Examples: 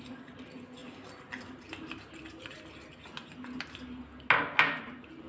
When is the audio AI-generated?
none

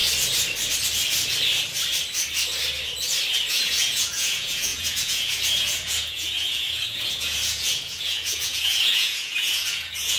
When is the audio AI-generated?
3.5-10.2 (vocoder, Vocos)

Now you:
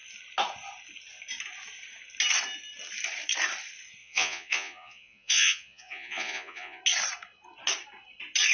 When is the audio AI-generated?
4.0-6.8 (vocoder, Vocos)

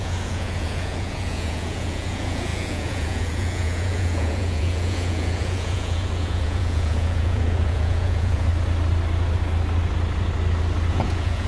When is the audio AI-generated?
0.0-8.5 (vocoder, Vocos); 10.9-11.5